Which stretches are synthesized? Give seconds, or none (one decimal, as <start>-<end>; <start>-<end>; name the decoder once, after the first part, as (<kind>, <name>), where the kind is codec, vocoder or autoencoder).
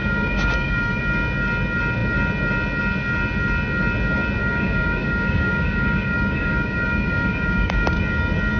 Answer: 0.0-1.0 (codec, DAC); 4.4-8.0